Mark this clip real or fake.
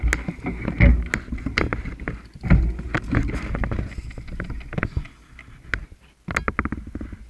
real